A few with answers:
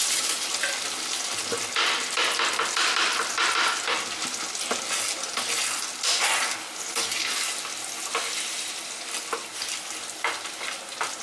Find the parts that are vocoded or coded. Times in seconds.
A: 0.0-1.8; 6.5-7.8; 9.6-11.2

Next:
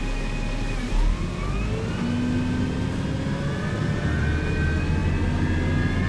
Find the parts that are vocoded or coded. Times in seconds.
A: none

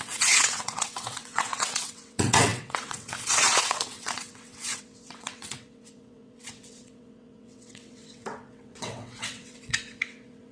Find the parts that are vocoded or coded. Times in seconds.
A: 0.0-10.5

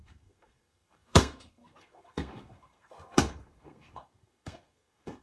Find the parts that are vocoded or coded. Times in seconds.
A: 0.0-5.2

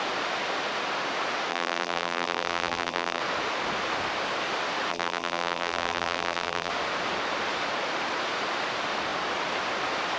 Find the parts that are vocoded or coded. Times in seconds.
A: 1.5-3.2; 4.9-6.7

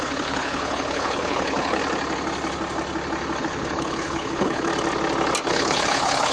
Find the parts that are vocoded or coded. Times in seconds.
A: 0.0-1.8; 3.4-4.7; 5.5-6.3

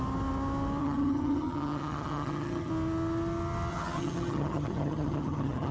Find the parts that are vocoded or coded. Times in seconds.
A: 0.8-2.7; 3.7-5.7

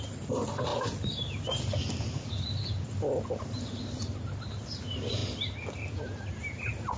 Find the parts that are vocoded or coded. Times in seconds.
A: 0.0-0.7; 4.5-5.2; 6.4-7.0